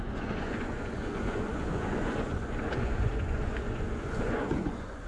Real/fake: fake